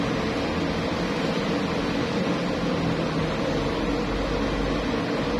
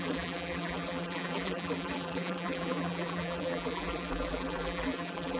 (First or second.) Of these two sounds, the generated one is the second